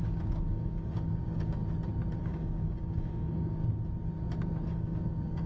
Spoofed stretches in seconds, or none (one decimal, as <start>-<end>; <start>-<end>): 0.0-1.6; 2.2-3.6; 4.7-5.5